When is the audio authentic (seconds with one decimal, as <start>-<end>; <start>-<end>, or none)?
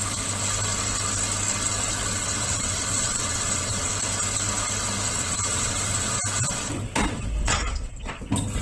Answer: 0.0-2.1; 3.9-5.1; 6.2-7.4; 8.2-8.6